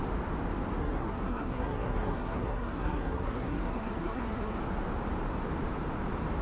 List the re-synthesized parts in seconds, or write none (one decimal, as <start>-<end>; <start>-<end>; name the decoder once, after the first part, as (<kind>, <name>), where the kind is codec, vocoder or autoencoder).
0.8-4.6 (codec, SNAC)